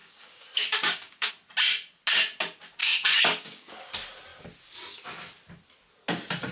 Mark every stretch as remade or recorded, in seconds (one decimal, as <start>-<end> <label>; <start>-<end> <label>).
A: 0.0-1.3 remade; 1.3-2.8 recorded; 2.8-3.9 remade; 3.9-6.5 recorded